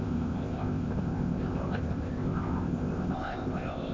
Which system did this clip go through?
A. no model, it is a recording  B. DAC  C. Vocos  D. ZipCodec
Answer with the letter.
D